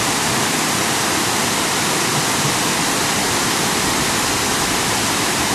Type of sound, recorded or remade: remade